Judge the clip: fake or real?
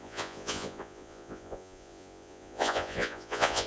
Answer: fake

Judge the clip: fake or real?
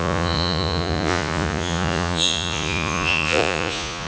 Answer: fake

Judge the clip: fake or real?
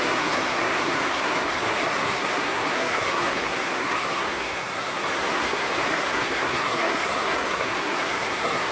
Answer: fake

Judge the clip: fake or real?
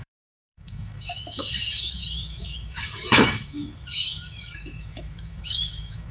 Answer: fake